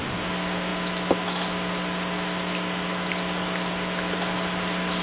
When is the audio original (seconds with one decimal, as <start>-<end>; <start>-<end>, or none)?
0.0-5.0